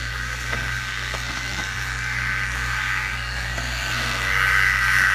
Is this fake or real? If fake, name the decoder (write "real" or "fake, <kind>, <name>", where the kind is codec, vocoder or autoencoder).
fake, codec, SNAC